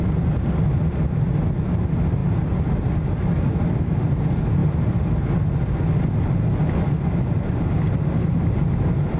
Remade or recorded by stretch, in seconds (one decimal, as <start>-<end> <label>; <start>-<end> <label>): 0.0-9.2 recorded